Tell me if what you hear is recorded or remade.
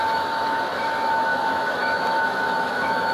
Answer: remade